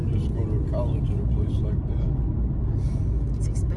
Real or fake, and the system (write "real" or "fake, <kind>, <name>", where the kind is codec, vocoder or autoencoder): real